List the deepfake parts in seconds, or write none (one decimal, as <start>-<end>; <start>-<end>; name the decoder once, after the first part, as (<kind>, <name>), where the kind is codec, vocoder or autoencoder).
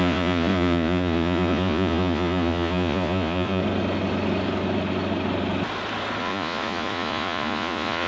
0.0-3.6 (vocoder, Vocos); 6.2-8.1